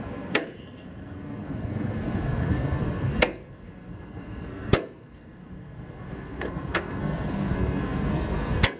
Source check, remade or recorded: remade